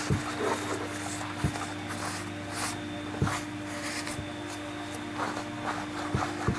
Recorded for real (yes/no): yes